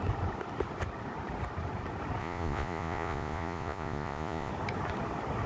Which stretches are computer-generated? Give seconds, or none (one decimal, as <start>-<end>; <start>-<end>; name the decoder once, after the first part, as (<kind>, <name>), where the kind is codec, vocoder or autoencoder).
2.2-4.5 (vocoder, Vocos)